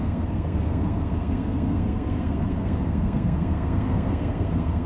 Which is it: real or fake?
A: fake